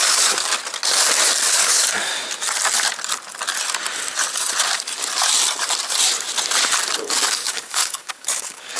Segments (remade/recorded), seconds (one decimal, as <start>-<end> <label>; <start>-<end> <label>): 0.0-0.5 remade; 0.5-1.5 recorded; 1.5-2.1 remade; 2.1-7.0 recorded; 7.0-8.8 remade